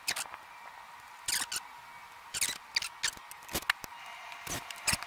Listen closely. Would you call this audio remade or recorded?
recorded